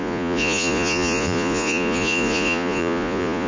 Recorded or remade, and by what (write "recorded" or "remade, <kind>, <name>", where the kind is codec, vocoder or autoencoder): remade, vocoder, Vocos